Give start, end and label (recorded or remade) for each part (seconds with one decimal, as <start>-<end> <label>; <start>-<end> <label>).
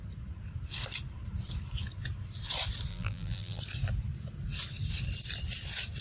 0.0-2.9 recorded; 2.9-3.6 remade; 3.6-6.0 recorded